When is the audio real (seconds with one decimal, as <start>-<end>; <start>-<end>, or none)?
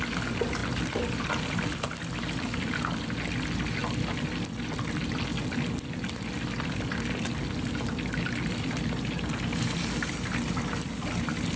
0.0-11.6